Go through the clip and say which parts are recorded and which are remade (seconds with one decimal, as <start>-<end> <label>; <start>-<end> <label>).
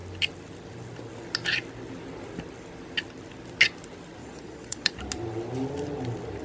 0.0-4.2 recorded; 4.2-4.9 remade; 4.9-6.4 recorded